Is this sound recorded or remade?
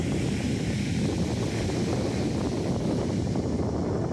recorded